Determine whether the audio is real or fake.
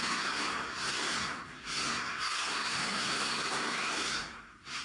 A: fake